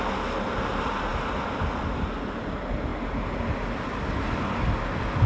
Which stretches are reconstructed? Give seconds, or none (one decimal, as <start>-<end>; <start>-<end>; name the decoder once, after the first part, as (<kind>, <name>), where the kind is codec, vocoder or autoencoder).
none